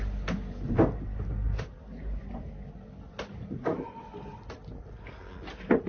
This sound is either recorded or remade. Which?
recorded